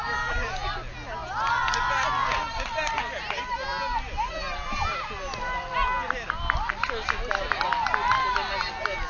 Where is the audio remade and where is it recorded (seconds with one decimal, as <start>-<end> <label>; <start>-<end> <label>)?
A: 0.0-9.1 recorded